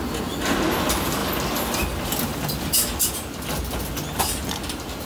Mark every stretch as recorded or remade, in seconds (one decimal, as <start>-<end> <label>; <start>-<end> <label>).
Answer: 0.0-5.0 recorded